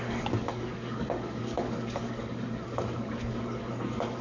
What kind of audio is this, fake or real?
fake